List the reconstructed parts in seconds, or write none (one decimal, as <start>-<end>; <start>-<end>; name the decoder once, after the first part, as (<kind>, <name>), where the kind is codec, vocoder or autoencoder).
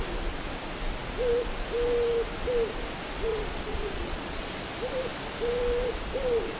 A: 3.3-4.4 (vocoder, Vocos)